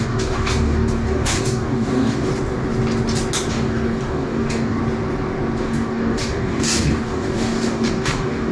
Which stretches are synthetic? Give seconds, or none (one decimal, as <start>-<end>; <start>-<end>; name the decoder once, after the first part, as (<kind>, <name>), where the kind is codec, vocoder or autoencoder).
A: 0.0-2.3 (codec, DAC); 3.5-4.8; 5.6-8.5

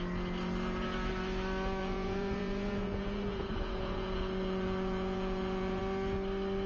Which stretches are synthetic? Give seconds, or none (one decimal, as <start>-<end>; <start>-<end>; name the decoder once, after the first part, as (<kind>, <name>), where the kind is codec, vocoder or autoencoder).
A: 1.8-5.8 (vocoder, Vocos)